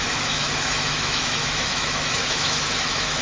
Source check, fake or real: fake